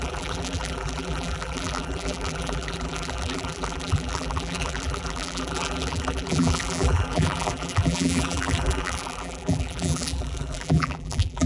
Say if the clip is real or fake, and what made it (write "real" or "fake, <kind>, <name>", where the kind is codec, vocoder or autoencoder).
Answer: fake, vocoder, BigVGAN v2